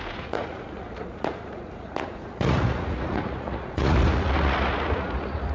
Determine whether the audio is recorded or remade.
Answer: remade